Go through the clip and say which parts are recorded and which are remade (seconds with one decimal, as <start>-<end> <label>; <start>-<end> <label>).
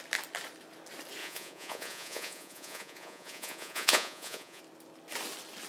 0.0-1.2 recorded; 1.2-4.6 remade; 4.6-5.7 recorded